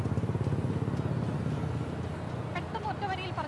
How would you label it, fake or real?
real